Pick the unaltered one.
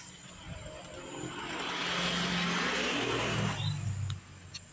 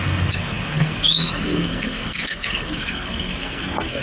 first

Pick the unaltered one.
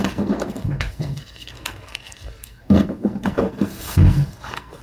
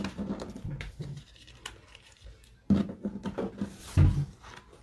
second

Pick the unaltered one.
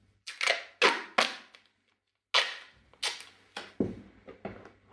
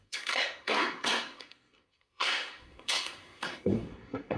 first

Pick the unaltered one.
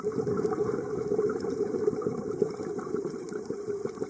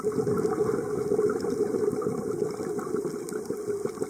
second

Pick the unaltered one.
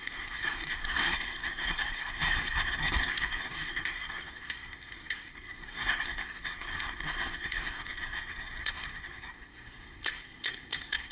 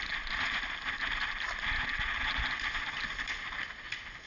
second